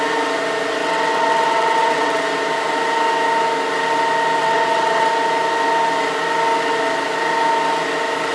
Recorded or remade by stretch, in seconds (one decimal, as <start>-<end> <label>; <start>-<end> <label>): 0.0-0.8 recorded; 0.8-2.2 remade; 2.2-4.4 recorded; 4.4-5.1 remade; 5.1-8.3 recorded